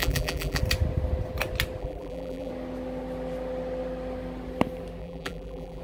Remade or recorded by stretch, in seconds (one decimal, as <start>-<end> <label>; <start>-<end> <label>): 0.0-0.6 remade; 0.6-1.8 recorded; 1.8-2.5 remade; 2.5-5.0 recorded; 5.0-5.8 remade